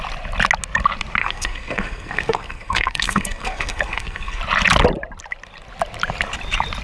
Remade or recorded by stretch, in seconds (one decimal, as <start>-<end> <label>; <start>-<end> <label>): 0.0-1.2 recorded; 1.2-4.4 remade; 4.4-6.8 recorded